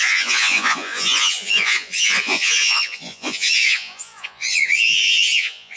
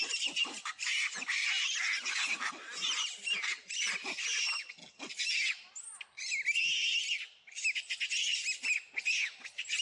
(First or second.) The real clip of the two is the second